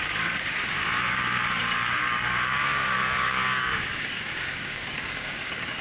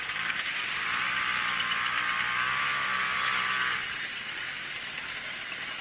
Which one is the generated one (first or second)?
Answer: first